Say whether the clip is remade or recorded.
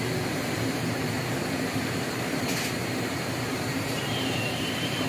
remade